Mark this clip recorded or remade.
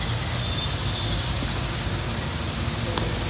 recorded